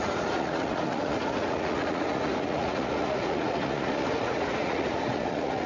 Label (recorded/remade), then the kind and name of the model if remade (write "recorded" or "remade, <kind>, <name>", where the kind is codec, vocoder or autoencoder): remade, vocoder, Vocos